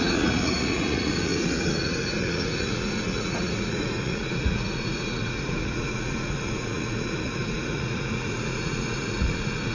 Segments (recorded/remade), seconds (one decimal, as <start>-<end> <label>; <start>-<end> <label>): 0.0-9.7 remade